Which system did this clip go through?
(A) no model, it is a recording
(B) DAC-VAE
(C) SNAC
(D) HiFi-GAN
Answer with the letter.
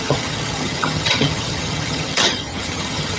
D